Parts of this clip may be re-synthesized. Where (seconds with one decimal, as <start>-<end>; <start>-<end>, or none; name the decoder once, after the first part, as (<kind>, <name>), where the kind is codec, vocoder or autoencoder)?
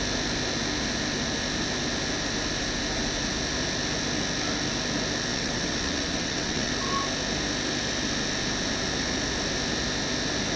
5.3-6.7 (vocoder, WaveNeXt)